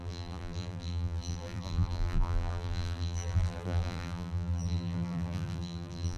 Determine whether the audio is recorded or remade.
remade